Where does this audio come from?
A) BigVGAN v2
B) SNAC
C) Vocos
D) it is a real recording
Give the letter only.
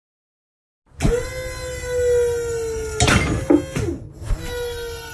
D